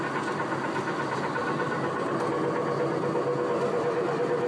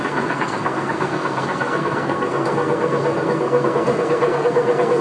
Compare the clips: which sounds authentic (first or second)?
first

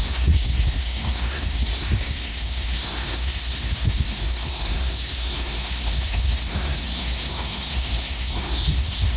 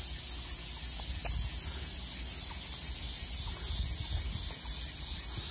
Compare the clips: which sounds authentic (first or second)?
second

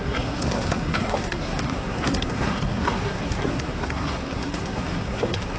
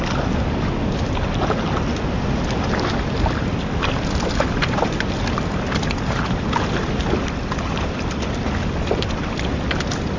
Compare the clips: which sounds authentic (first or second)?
second